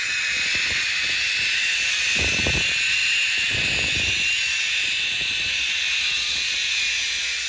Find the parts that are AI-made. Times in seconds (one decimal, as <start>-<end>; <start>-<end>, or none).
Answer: none